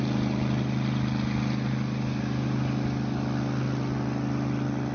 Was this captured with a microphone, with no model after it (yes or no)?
yes